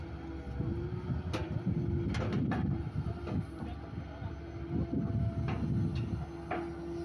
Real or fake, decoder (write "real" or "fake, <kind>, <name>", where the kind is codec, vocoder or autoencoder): real